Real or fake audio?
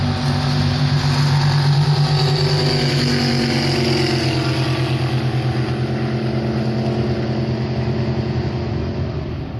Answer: real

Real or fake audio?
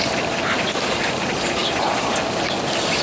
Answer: real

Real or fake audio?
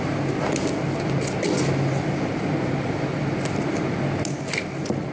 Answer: real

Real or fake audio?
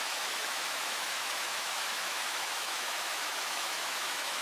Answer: fake